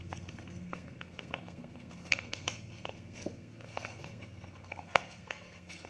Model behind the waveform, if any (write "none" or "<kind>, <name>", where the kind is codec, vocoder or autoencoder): codec, SNAC